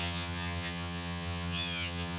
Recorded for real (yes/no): no